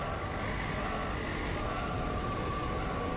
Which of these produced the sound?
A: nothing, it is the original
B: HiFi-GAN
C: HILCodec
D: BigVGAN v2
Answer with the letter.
A